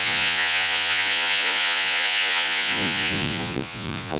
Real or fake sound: fake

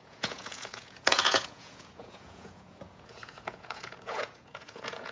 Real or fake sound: fake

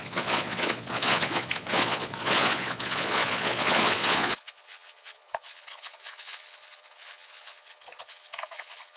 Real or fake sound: fake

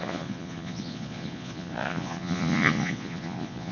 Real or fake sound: fake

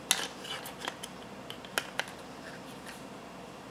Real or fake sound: real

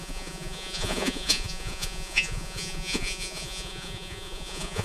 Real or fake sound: fake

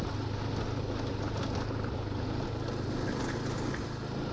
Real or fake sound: real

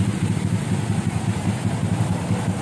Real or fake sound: real